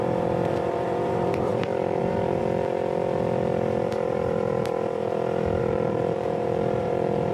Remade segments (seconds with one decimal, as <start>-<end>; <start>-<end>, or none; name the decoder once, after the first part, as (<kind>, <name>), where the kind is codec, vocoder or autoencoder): 0.0-2.4 (vocoder, BigVGAN v2); 5.6-7.3